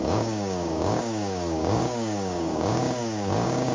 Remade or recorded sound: remade